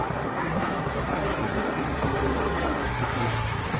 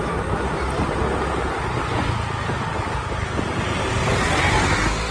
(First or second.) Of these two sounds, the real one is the second